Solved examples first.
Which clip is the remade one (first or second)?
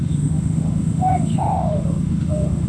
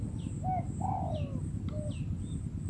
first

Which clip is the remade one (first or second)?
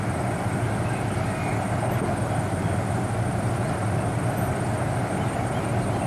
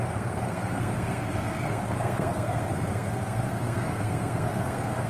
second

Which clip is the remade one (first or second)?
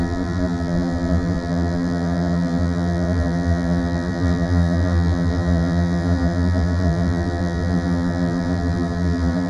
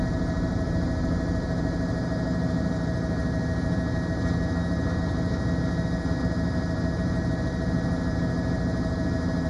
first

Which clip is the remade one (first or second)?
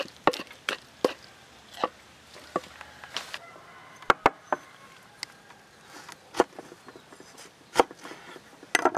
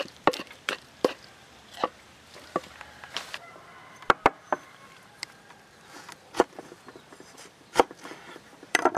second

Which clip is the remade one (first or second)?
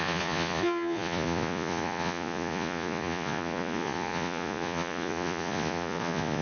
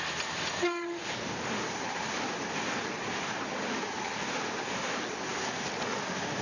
first